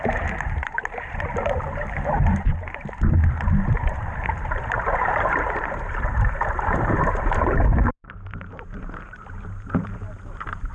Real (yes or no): no